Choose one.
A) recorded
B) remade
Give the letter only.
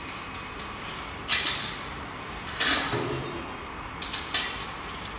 B